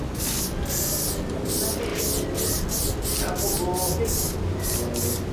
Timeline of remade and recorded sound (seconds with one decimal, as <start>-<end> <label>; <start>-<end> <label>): 0.0-5.3 recorded

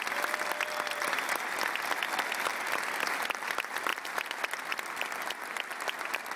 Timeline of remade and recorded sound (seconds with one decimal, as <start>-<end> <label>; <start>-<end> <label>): 0.0-3.9 recorded; 3.9-4.4 remade; 4.4-6.4 recorded

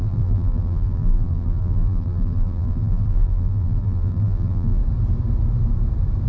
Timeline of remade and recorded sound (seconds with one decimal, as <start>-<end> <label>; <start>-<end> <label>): 0.0-4.8 remade; 4.8-6.3 recorded

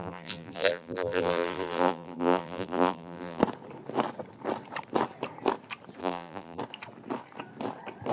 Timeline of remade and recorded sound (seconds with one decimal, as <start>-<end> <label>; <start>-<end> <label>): 0.0-3.4 remade; 3.4-6.0 recorded; 6.0-6.6 remade; 6.6-8.1 recorded

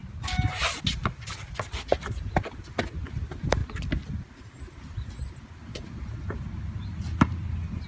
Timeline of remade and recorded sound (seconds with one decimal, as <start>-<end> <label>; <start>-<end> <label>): 0.0-7.9 recorded

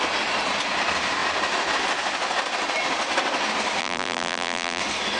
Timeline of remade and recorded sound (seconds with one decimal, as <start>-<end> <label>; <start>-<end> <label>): 0.0-3.8 recorded; 3.8-4.8 remade; 4.8-5.2 recorded

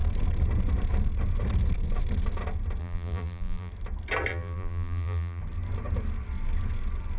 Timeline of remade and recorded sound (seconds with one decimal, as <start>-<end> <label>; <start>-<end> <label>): 0.0-2.8 recorded; 2.8-3.7 remade; 3.7-4.3 recorded; 4.3-5.4 remade; 5.4-7.2 recorded